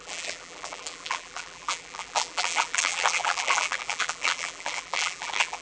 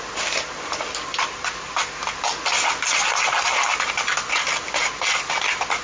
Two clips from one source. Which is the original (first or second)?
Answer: second